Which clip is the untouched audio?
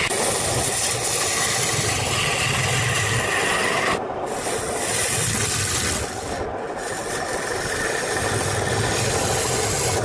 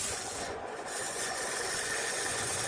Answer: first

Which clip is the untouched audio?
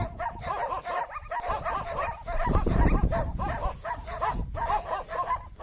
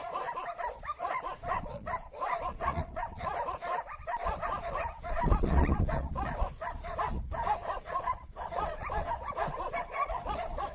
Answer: first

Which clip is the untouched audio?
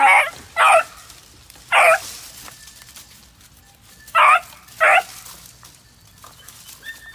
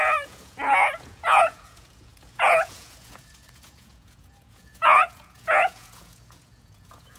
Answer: first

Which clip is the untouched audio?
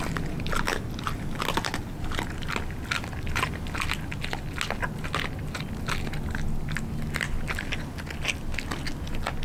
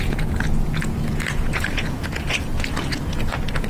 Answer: first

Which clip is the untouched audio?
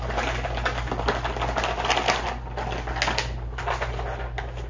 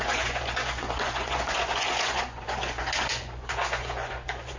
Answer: first